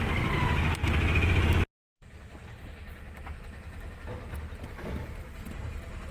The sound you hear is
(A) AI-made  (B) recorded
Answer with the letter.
B